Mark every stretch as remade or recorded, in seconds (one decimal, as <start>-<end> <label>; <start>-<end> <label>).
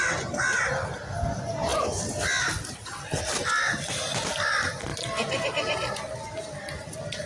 0.0-4.9 recorded; 4.9-7.3 remade